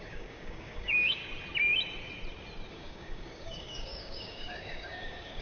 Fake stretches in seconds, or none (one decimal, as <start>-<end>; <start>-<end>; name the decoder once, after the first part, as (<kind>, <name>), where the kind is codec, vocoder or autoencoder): 0.0-1.2 (codec, DAC); 2.7-5.4